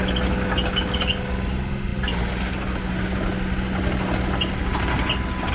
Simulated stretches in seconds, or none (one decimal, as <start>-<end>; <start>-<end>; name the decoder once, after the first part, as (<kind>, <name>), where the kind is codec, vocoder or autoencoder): none